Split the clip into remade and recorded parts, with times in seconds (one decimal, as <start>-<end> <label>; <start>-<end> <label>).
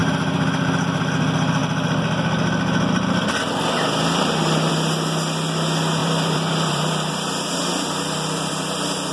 0.0-1.0 remade; 1.0-6.0 recorded; 6.0-7.1 remade; 7.1-7.7 recorded; 7.7-8.5 remade; 8.5-9.1 recorded